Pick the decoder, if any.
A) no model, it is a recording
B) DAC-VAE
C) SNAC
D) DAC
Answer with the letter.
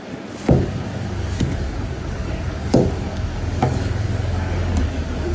D